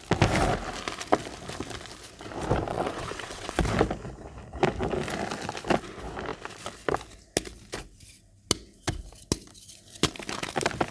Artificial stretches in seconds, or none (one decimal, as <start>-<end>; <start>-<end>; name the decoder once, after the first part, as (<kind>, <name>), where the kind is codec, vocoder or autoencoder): 2.7-3.6 (vocoder, WaveNeXt)